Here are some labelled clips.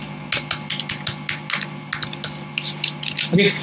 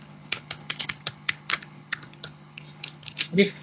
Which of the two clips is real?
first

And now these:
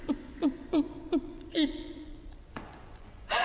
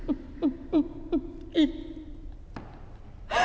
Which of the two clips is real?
second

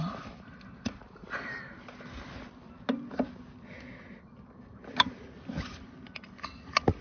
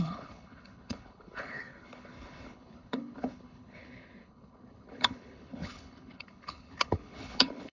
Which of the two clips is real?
first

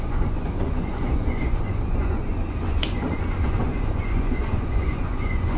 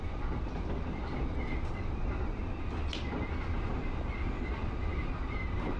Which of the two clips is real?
second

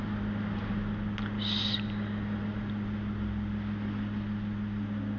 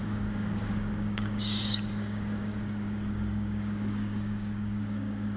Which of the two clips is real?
first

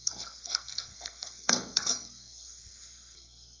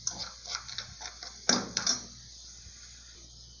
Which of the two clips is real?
second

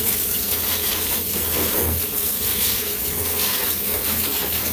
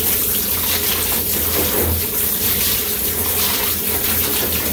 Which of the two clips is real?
second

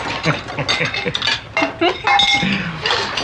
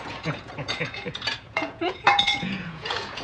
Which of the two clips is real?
first